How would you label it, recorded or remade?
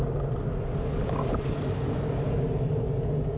recorded